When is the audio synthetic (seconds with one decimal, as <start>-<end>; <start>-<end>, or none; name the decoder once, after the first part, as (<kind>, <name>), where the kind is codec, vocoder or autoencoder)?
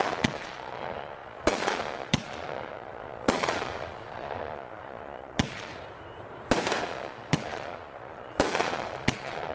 0.0-5.7 (vocoder, Vocos); 6.8-9.5